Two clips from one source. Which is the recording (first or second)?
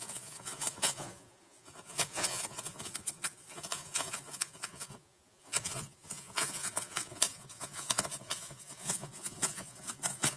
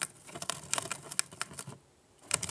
second